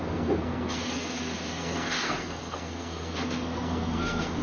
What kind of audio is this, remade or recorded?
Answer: remade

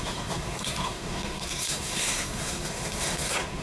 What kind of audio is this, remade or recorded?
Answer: remade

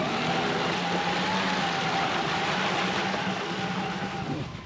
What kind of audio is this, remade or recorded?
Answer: recorded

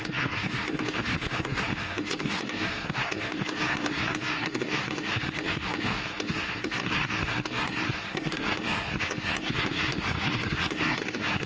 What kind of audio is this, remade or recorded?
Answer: remade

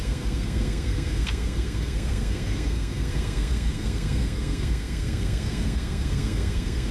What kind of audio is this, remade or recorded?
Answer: remade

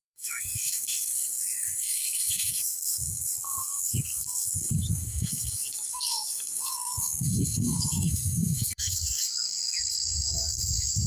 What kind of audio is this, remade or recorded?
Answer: remade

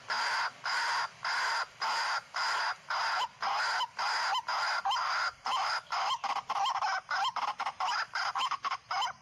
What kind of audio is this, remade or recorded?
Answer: recorded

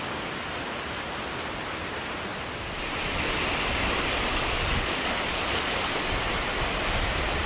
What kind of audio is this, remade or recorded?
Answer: recorded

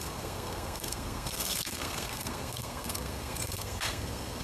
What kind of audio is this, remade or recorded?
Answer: remade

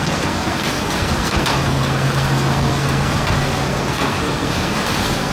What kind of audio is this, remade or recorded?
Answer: remade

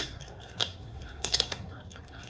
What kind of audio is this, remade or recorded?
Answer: remade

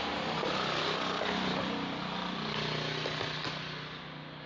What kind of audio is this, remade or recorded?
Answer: recorded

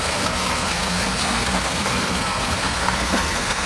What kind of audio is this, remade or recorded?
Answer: remade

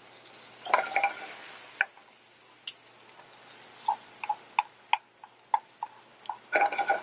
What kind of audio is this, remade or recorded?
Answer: recorded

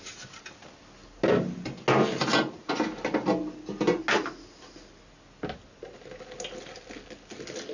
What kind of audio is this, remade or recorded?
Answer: recorded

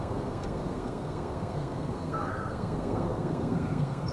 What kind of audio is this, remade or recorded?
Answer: remade